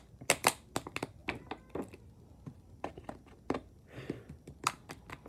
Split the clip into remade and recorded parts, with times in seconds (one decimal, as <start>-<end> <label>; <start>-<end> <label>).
0.0-5.3 recorded